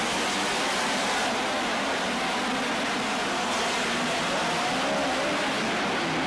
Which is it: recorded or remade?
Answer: recorded